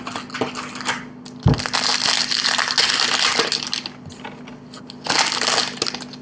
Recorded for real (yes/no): yes